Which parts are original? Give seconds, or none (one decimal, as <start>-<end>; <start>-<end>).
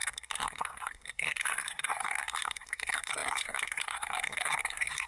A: none